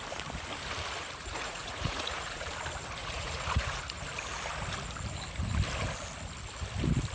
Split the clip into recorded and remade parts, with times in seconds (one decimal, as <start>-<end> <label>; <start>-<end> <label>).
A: 0.0-1.2 recorded; 1.2-2.5 remade; 2.5-3.0 recorded; 3.0-3.8 remade; 3.8-7.1 recorded